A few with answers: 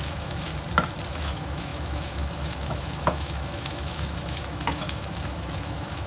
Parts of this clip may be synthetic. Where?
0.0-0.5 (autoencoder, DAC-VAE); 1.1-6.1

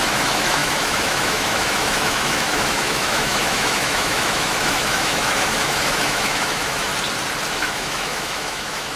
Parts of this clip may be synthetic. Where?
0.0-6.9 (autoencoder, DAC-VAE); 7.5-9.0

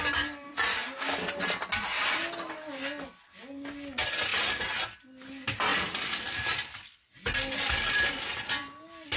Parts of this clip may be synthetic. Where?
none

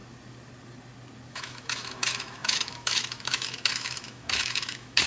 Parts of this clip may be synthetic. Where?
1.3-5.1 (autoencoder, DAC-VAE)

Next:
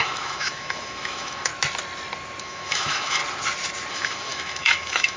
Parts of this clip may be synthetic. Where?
0.0-1.5 (autoencoder, DAC-VAE); 2.4-3.2; 3.9-5.2